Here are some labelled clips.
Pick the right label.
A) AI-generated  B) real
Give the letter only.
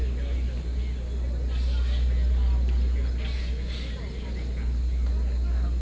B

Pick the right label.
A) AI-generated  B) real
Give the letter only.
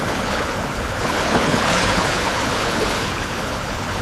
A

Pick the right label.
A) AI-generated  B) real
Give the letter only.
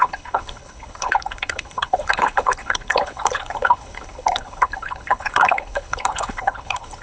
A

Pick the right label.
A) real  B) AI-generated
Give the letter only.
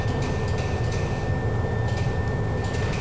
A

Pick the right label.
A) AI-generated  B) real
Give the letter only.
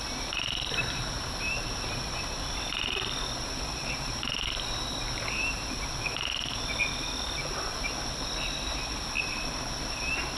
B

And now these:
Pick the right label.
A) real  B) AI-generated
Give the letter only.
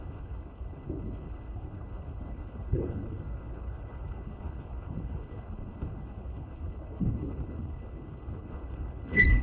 B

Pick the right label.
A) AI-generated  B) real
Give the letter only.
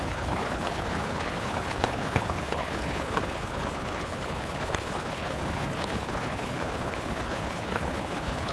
A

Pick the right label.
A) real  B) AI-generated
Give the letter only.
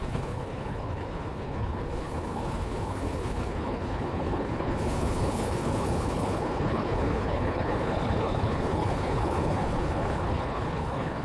B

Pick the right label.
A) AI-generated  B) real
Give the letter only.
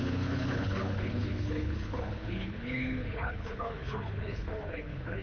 A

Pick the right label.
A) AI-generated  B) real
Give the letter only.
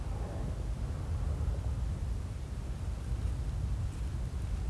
B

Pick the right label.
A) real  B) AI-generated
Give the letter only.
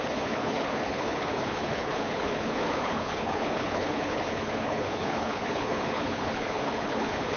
B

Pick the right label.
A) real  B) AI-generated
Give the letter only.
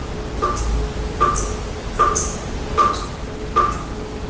A